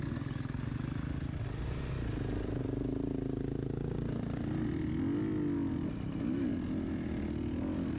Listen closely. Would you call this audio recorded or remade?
recorded